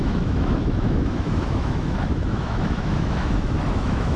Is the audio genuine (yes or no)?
no